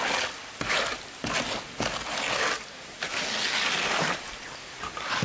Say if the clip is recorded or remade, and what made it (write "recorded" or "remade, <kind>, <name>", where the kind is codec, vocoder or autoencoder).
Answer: recorded